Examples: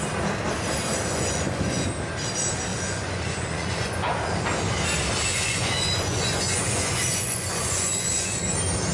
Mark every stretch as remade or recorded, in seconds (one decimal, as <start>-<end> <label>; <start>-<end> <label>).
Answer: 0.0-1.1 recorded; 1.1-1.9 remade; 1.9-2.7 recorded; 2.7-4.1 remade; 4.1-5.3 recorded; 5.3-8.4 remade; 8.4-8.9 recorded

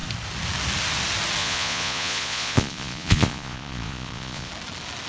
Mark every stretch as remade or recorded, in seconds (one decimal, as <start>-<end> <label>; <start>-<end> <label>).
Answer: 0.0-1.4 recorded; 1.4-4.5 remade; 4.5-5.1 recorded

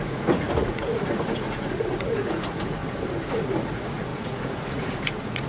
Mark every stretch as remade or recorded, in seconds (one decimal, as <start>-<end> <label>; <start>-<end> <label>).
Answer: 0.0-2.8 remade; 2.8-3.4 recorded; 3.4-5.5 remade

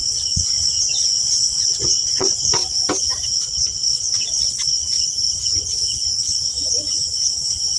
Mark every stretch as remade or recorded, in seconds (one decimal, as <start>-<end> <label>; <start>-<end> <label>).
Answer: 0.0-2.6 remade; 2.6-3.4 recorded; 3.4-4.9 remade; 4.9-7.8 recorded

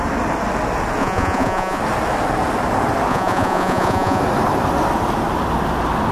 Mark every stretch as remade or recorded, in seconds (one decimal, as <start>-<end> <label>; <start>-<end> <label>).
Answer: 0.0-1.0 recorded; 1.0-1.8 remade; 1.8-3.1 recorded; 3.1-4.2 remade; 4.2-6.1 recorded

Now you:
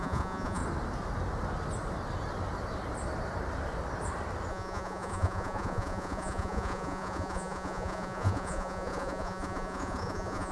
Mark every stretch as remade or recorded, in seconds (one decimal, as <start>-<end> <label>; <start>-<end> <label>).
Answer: 0.0-0.6 remade; 0.6-4.5 recorded; 4.5-10.5 remade